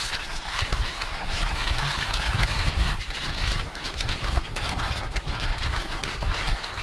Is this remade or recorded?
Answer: remade